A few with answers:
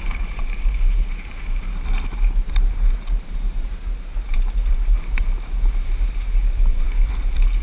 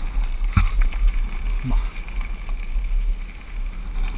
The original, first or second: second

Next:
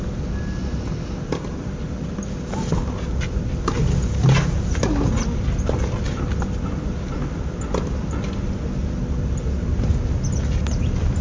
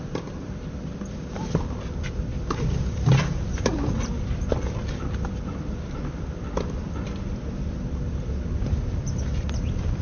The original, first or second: first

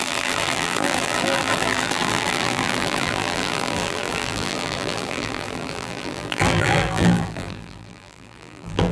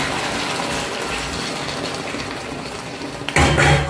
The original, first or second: second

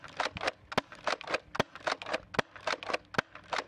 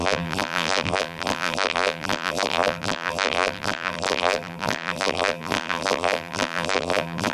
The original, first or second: first